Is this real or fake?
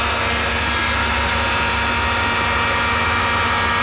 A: real